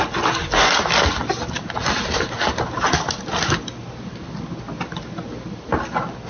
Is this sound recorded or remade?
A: recorded